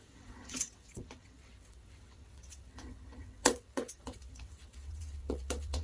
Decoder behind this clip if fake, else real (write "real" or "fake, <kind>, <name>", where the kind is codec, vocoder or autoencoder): fake, vocoder, WaveNeXt